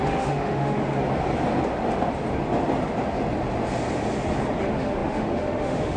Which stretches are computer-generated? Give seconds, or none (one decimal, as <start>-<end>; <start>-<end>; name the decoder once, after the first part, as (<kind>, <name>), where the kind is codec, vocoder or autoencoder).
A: 0.0-1.0 (autoencoder, DAC-VAE); 4.6-6.0